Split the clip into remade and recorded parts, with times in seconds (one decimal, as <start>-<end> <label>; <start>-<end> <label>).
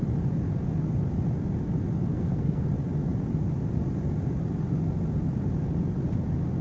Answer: 0.0-2.1 recorded; 2.1-2.7 remade; 2.7-6.6 recorded